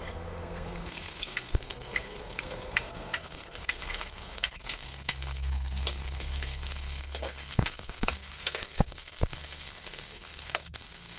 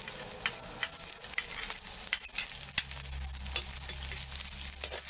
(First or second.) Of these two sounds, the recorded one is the second